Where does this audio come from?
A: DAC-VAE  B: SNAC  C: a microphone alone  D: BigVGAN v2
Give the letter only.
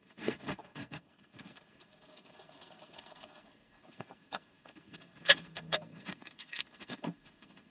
B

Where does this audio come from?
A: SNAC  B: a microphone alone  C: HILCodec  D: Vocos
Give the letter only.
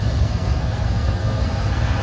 A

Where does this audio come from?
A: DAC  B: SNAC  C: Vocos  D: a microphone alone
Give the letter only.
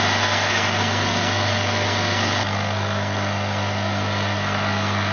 B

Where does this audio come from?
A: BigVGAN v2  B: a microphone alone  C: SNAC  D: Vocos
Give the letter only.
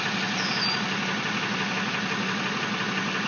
B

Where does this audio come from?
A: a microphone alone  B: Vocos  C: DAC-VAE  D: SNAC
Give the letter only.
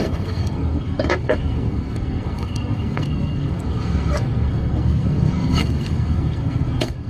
D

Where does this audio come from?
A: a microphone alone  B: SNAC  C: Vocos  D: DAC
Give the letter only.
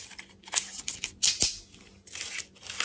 A